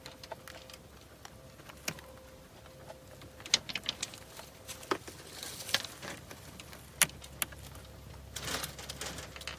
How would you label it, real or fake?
real